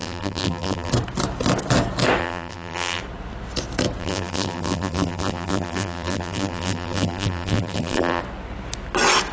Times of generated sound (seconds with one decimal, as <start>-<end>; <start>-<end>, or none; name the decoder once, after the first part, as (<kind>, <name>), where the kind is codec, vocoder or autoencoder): 0.0-0.9 (vocoder, BigVGAN v2); 2.2-3.0; 4.0-8.2